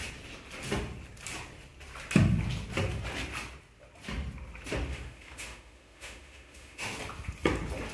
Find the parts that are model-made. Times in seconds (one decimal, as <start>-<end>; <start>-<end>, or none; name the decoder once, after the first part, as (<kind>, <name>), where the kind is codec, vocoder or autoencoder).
4.9-7.0 (autoencoder, DAC-VAE)